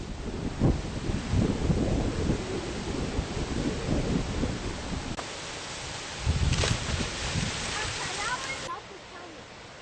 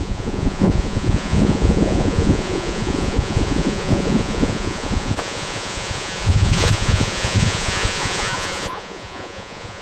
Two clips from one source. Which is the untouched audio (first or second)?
first